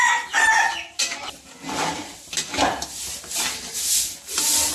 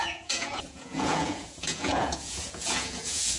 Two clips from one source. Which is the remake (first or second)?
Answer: second